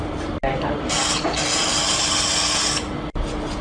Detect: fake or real real